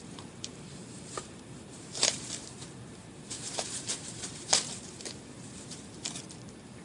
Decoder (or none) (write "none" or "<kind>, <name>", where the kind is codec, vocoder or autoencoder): vocoder, BigVGAN v2